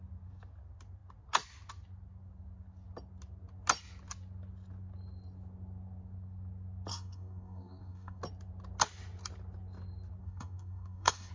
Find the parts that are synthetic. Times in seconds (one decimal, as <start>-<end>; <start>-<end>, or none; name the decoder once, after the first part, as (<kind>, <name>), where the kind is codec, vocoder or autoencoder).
6.9-8.2 (codec, DAC); 10.2-11.3